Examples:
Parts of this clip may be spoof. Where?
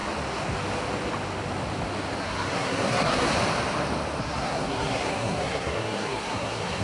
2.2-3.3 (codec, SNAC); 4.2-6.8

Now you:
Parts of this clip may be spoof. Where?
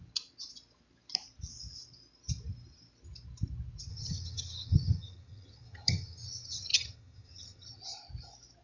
3.9-7.8 (vocoder, HiFi-GAN)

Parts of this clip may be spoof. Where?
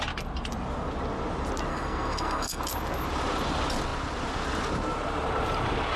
1.7-2.6 (codec, SNAC)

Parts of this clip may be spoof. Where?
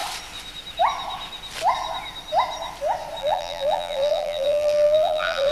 3.2-5.5 (vocoder, BigVGAN v2)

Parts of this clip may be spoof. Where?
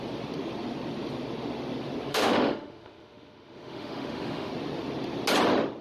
2.1-4.5 (autoencoder, DAC-VAE)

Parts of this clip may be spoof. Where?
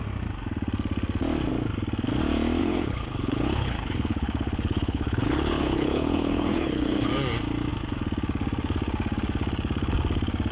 2.6-7.1 (codec, HILCodec)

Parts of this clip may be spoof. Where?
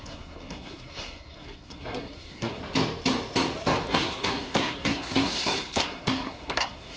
0.0-2.6 (codec, SNAC); 3.9-7.0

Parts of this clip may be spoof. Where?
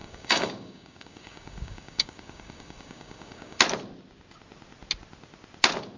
0.0-3.6 (codec, DAC)